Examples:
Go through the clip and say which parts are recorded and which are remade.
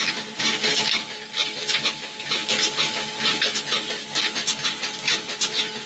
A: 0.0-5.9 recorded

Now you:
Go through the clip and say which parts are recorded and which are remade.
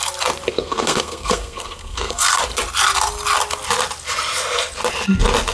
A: 0.0-0.5 recorded; 0.5-2.4 remade; 2.4-5.5 recorded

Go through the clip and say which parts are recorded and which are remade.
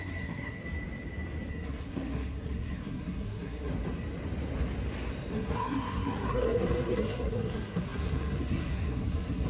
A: 0.0-0.6 remade; 0.6-1.5 recorded; 1.5-3.7 remade; 3.7-5.3 recorded; 5.3-9.5 remade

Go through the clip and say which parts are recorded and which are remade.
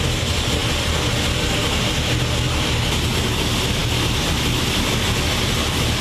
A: 0.0-6.0 recorded